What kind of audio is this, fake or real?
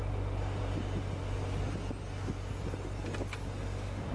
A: real